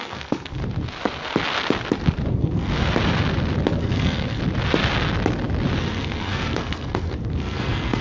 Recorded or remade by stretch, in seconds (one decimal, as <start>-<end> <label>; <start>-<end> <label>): 0.0-0.6 remade; 0.6-2.3 recorded; 2.3-2.7 remade; 2.7-3.8 recorded; 3.8-4.4 remade; 4.4-5.8 recorded; 5.8-8.0 remade